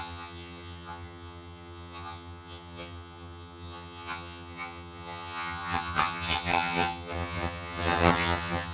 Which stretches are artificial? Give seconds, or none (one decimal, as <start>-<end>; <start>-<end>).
0.0-8.7